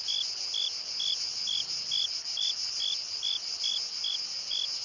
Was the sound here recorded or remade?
recorded